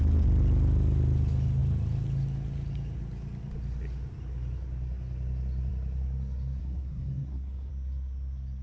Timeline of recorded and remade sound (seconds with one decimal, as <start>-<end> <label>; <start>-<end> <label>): 0.0-6.6 recorded; 6.6-7.7 remade; 7.7-8.6 recorded